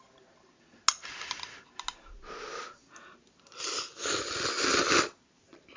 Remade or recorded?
recorded